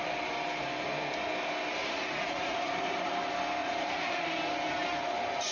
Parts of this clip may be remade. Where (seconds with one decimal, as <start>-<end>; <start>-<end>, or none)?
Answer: 1.8-3.1; 3.6-4.3